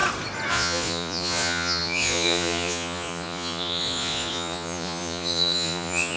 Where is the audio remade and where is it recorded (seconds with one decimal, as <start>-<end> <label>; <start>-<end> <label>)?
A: 0.0-0.5 recorded; 0.5-6.2 remade